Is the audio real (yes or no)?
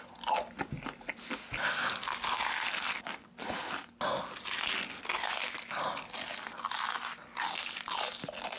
yes